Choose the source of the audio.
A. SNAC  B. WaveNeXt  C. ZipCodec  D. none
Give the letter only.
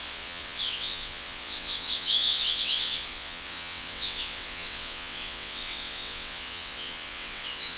B